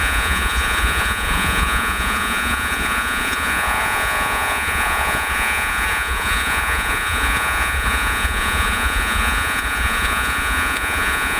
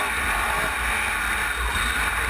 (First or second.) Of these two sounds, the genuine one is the second